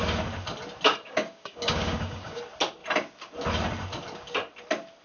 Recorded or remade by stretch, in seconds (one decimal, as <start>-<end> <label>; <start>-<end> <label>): 0.0-0.9 recorded; 0.9-2.4 remade; 2.4-5.0 recorded